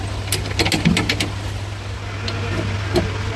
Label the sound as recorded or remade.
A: recorded